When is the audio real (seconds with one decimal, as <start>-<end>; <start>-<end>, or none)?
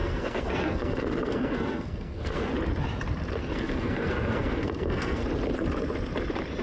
2.5-3.4; 5.2-6.6